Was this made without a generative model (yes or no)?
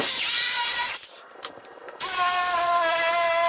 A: no